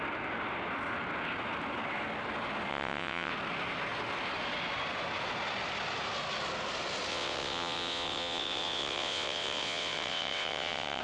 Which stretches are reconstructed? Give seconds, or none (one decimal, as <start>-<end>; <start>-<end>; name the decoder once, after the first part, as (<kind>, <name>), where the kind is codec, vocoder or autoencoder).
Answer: 2.7-3.3 (vocoder, WaveNeXt); 7.1-11.0